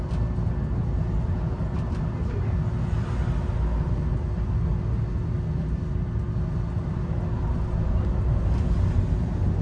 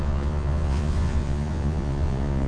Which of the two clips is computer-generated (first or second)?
second